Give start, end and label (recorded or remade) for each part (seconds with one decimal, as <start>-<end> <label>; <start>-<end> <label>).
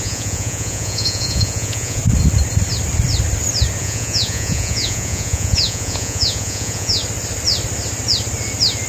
0.0-2.0 remade; 2.0-3.8 recorded; 3.8-7.0 remade; 7.0-8.9 recorded